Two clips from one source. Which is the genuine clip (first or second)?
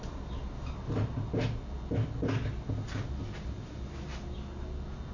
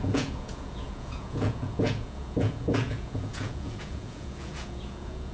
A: first